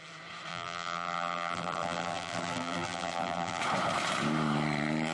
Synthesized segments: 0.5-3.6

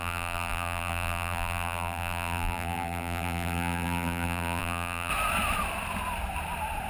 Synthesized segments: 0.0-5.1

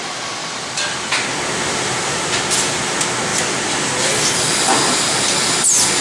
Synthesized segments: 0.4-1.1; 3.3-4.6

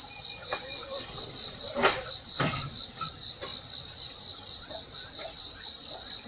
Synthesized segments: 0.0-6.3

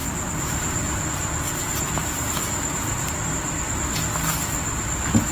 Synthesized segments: 0.0-1.1; 2.0-3.9

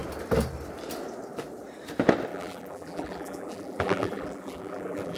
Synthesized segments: 2.3-5.2

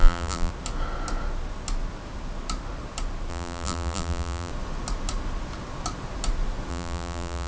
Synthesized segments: 0.0-0.5; 3.3-4.5; 6.7-7.5